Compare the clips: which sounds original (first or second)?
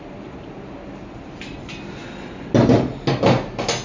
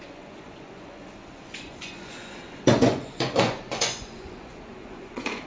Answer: first